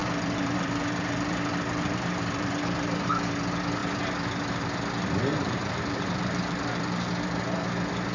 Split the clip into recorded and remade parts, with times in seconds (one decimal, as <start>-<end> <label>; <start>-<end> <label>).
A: 0.0-3.1 remade; 3.1-5.3 recorded; 5.3-7.1 remade; 7.1-8.1 recorded